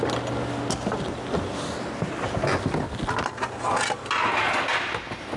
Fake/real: real